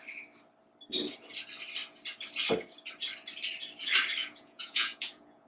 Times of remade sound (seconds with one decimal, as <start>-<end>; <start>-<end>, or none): 4.2-5.5